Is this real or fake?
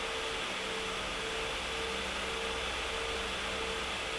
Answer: real